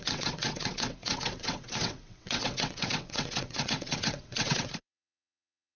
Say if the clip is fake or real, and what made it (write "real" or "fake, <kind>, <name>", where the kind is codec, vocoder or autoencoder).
fake, vocoder, WaveNeXt